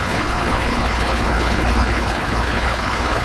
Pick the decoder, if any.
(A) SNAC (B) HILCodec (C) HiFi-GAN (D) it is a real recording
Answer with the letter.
B